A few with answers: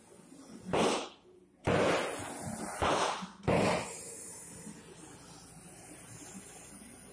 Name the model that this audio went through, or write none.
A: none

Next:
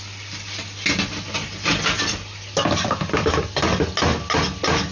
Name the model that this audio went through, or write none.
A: none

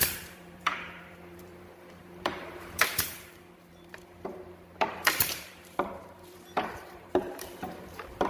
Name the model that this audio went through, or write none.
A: vocoder, BigVGAN v2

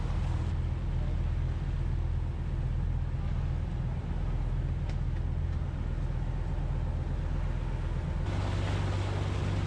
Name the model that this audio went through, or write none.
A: none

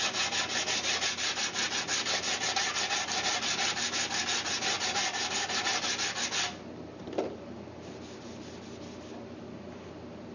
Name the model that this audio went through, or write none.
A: none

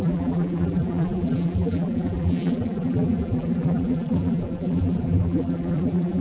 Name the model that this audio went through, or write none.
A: vocoder, BigVGAN v2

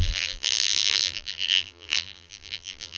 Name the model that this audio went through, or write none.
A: vocoder, BigVGAN v2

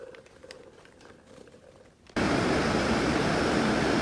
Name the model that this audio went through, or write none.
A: vocoder, BigVGAN v2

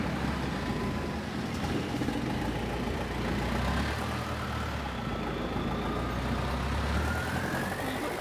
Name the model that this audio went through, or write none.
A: none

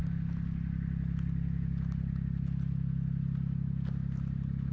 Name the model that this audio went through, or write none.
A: none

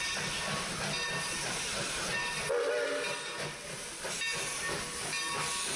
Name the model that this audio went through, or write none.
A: none